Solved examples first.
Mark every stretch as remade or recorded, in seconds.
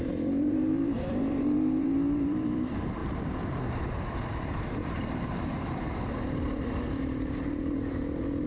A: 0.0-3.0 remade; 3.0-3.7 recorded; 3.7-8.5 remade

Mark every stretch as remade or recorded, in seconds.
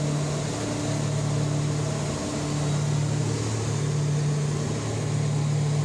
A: 0.0-5.8 recorded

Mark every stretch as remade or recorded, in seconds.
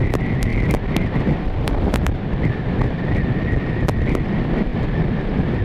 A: 0.0-5.6 recorded